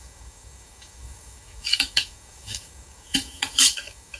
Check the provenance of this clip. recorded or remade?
remade